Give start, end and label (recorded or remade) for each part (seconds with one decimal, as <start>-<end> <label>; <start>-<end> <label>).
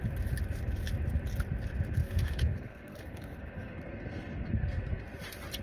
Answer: 0.0-2.0 recorded; 2.0-5.0 remade; 5.0-5.6 recorded